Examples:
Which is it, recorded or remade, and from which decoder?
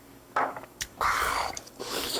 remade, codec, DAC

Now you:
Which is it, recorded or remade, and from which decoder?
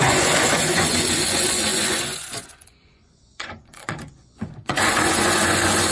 remade, vocoder, Vocos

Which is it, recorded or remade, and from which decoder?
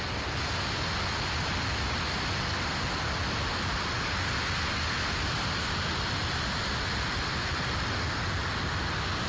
recorded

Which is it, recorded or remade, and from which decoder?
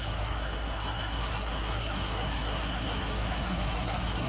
remade, codec, SNAC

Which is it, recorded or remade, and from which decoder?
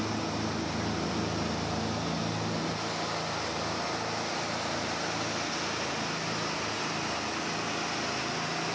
recorded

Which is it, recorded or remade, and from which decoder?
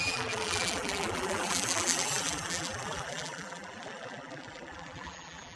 remade, vocoder, BigVGAN v2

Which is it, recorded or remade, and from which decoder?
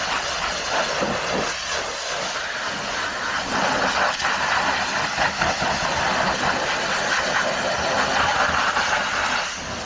recorded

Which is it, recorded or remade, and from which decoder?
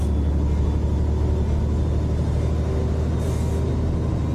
recorded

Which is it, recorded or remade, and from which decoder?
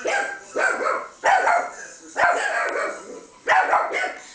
remade, vocoder, BigVGAN v2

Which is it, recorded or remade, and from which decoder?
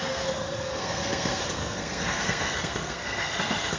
remade, codec, SNAC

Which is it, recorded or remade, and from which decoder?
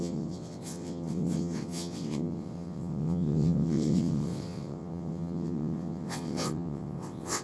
remade, vocoder, WaveNeXt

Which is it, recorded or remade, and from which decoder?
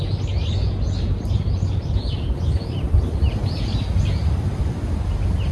recorded